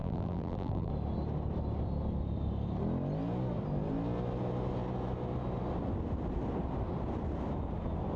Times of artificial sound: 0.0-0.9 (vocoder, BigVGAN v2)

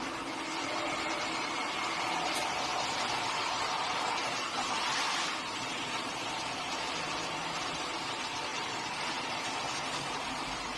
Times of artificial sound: 0.0-10.8 (vocoder, BigVGAN v2)

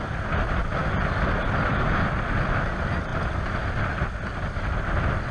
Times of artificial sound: none

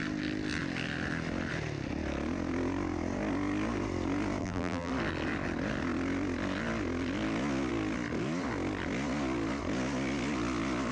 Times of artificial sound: 4.4-4.9 (vocoder, BigVGAN v2)

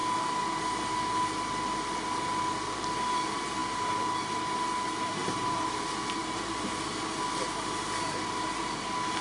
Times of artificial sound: 5.2-5.8 (vocoder, BigVGAN v2); 6.2-6.7

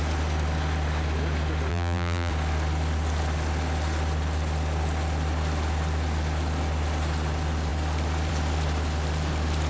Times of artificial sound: 1.7-2.3 (vocoder, BigVGAN v2)